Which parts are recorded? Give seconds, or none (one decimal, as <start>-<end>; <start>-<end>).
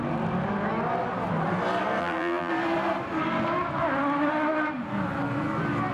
0.0-2.0; 2.5-5.9